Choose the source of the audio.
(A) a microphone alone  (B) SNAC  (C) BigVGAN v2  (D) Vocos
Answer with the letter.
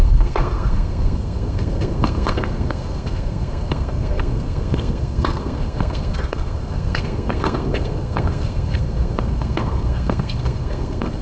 B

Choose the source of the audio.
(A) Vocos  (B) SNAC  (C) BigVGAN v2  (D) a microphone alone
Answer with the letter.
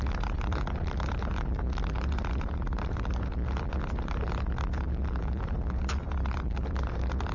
C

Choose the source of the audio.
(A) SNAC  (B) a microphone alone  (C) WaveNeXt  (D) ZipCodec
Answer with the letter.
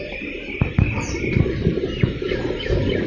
B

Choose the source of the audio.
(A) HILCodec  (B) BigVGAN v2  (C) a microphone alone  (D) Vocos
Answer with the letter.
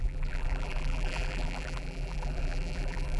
B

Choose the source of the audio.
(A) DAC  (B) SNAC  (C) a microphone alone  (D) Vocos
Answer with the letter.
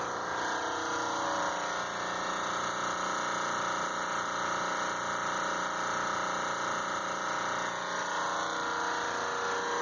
C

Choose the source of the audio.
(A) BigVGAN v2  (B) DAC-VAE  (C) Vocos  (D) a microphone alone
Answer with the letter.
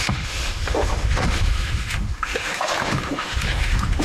B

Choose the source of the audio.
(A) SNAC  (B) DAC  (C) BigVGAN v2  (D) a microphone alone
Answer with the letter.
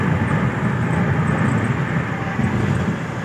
D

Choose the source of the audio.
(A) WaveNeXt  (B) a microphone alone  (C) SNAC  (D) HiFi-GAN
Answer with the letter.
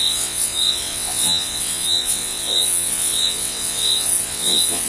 A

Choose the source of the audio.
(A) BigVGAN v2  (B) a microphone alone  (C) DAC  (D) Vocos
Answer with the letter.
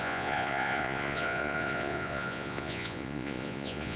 D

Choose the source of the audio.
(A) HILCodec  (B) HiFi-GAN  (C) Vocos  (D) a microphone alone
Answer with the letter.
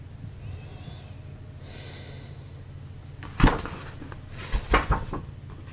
D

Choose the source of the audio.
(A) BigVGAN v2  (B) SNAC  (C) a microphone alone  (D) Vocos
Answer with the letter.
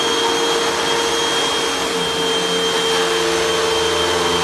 C